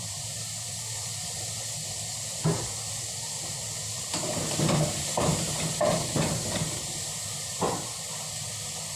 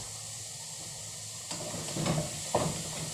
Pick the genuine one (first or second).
second